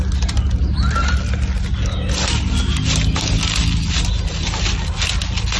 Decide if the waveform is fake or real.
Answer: real